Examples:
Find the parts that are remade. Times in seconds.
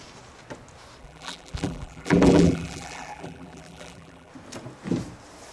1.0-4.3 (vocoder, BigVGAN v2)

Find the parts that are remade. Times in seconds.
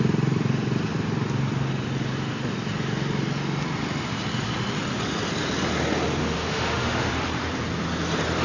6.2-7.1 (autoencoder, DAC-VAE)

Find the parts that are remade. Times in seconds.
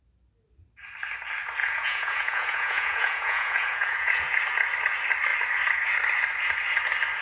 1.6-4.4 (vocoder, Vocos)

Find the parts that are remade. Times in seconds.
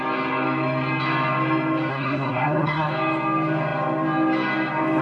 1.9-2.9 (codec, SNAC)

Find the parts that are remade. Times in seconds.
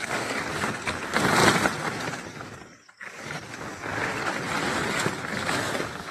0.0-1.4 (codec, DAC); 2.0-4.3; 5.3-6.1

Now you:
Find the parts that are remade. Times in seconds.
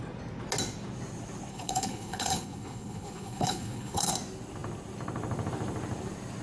1.5-4.1 (codec, HILCodec)